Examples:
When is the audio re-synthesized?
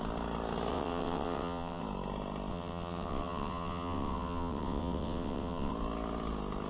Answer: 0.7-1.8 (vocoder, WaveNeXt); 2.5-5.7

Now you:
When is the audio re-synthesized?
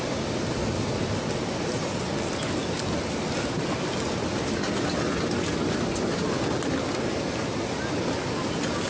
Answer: none